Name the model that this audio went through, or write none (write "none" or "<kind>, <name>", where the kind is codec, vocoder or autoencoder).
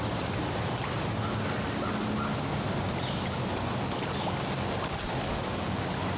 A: none